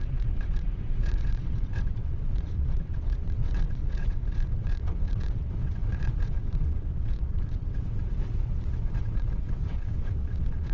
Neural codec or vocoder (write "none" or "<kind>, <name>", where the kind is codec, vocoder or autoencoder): vocoder, WaveNeXt